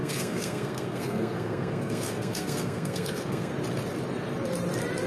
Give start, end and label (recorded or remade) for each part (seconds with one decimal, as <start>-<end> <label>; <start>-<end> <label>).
0.0-3.5 remade; 3.5-5.1 recorded